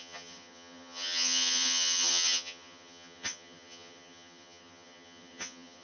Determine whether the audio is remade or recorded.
remade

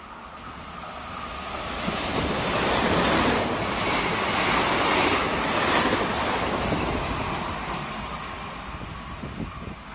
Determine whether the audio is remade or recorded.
recorded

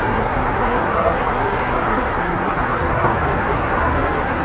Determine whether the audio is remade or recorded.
remade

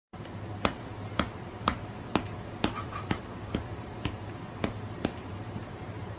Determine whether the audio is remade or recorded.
remade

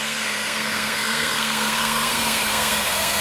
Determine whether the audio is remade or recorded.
remade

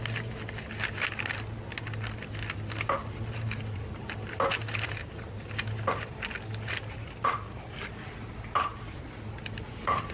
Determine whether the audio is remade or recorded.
recorded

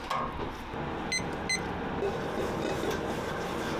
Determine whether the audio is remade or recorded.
recorded